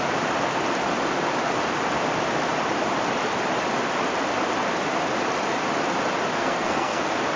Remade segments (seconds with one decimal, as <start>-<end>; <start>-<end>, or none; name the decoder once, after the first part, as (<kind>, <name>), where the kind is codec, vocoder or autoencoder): 6.4-7.0 (codec, SNAC)